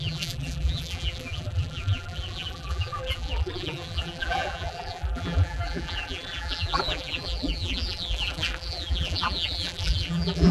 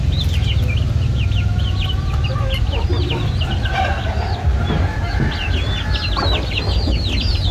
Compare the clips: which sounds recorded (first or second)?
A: second